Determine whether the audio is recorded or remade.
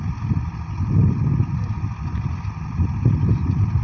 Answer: recorded